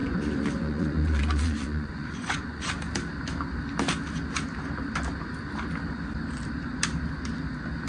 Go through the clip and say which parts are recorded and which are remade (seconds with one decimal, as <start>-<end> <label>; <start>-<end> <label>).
0.0-2.7 remade; 2.7-7.9 recorded